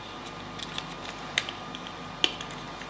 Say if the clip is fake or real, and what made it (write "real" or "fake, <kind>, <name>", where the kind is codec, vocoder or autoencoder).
real